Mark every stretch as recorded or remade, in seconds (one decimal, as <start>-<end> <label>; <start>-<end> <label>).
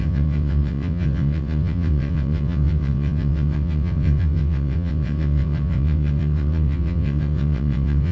0.0-8.1 remade